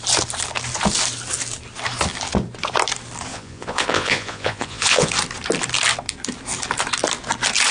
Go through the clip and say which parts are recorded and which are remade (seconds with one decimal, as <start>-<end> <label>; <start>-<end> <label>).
0.0-3.3 recorded; 3.3-5.1 remade; 5.1-7.7 recorded